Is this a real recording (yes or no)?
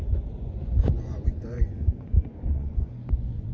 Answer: no